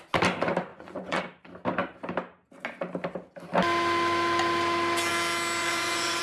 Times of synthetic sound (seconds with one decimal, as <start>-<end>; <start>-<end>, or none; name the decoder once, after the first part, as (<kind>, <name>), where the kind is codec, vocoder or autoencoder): 0.7-1.2 (vocoder, Vocos); 5.6-6.2